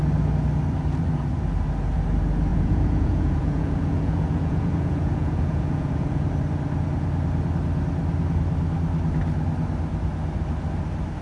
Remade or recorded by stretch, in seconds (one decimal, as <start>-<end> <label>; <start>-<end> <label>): 0.0-2.5 recorded; 2.5-6.3 remade; 6.3-11.2 recorded

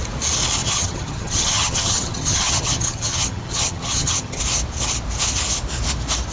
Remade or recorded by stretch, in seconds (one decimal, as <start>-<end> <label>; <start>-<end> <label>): 0.0-0.6 recorded; 0.6-4.4 remade; 4.4-6.3 recorded